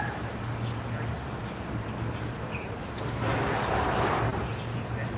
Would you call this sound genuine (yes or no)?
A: yes